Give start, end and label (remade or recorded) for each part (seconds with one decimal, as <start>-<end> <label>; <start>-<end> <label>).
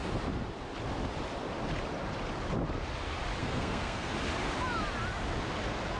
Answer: 0.0-3.4 recorded; 3.4-4.1 remade; 4.1-6.0 recorded